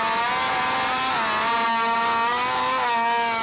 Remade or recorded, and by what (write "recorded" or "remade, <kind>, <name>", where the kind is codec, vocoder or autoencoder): recorded